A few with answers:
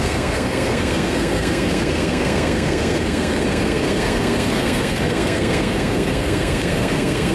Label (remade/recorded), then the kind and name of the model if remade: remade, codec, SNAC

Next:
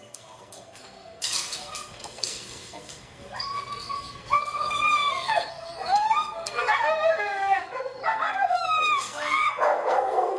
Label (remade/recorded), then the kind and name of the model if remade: remade, codec, SNAC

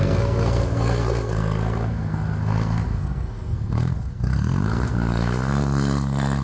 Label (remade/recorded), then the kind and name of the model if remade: remade, codec, SNAC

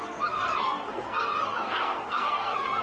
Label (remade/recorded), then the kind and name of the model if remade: remade, codec, SNAC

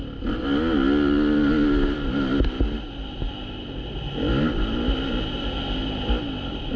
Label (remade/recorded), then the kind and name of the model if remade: recorded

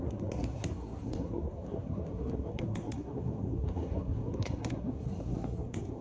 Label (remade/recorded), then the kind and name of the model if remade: remade, codec, SNAC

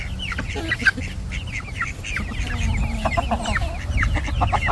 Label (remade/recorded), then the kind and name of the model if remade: recorded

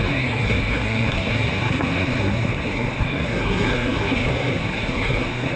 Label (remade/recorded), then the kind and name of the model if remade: remade, codec, SNAC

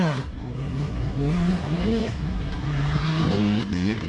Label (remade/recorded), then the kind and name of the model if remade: remade, codec, SNAC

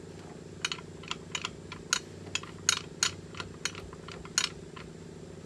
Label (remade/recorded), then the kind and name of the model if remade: recorded